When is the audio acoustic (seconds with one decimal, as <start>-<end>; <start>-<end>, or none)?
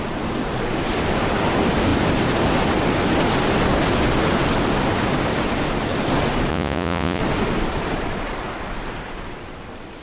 0.0-6.5; 7.2-10.0